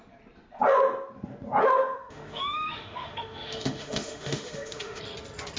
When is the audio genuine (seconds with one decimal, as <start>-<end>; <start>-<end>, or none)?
0.0-1.6; 5.0-5.6